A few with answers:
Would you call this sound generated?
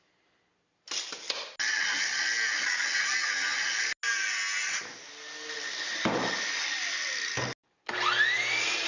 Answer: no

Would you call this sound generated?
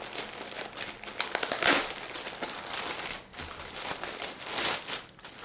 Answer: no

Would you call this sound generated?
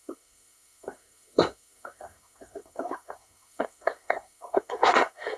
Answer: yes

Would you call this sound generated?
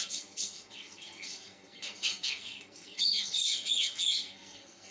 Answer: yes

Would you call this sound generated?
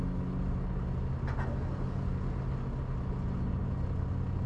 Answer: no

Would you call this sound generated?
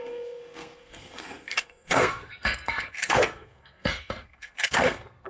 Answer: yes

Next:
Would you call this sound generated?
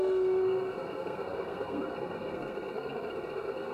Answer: yes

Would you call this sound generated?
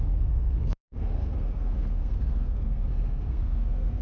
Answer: yes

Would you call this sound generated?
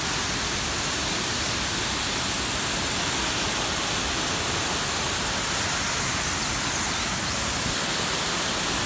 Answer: no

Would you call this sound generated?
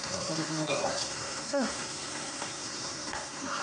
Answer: yes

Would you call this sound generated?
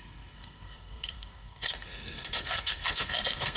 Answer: yes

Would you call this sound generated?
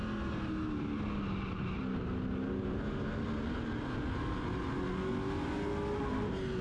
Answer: no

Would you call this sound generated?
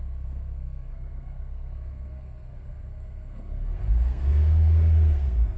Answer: yes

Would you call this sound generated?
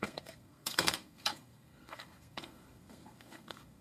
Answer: yes